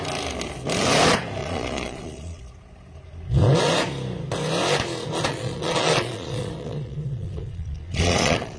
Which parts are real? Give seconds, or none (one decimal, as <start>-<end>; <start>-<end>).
0.0-1.4; 2.4-5.3